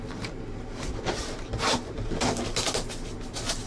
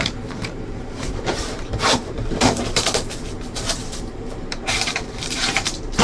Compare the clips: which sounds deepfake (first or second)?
second